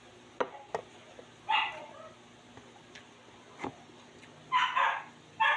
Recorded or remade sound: recorded